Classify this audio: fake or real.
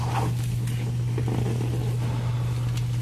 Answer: real